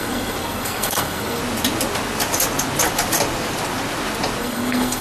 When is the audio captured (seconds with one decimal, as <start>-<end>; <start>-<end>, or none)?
1.4-4.4